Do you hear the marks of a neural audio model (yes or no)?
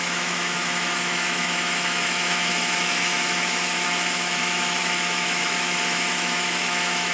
yes